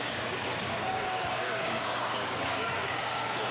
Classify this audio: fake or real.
fake